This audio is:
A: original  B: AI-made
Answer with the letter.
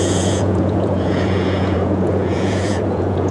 B